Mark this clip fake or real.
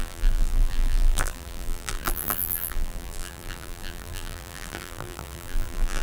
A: fake